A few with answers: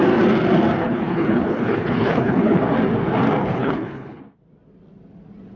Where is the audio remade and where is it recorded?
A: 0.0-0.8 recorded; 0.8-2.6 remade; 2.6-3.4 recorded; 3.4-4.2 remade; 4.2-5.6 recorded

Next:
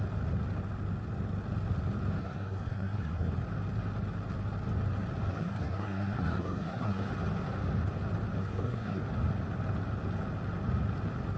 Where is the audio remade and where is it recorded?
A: 0.0-2.2 recorded; 2.2-3.3 remade; 3.3-5.3 recorded; 5.3-7.1 remade; 7.1-8.4 recorded; 8.4-9.0 remade; 9.0-11.4 recorded

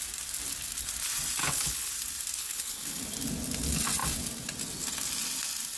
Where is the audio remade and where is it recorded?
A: 0.0-1.4 recorded; 1.4-1.9 remade; 1.9-2.4 recorded; 2.4-3.0 remade; 3.0-5.8 recorded

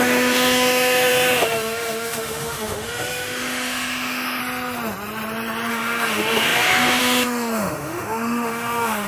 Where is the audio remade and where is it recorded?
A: 0.0-4.4 remade; 4.4-5.7 recorded; 5.7-9.1 remade